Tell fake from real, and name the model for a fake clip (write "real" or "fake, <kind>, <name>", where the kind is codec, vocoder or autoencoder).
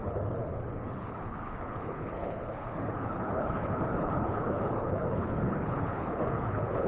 fake, codec, HILCodec